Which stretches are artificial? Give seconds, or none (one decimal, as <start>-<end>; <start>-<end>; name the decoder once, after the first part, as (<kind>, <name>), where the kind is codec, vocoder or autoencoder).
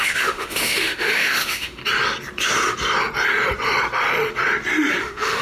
0.0-1.8 (autoencoder, DAC-VAE); 5.0-5.4